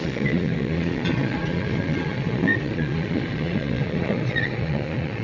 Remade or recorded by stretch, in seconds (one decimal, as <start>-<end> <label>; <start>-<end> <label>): 0.0-5.2 remade